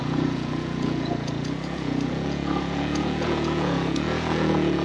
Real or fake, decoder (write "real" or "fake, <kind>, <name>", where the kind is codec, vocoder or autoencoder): fake, vocoder, Vocos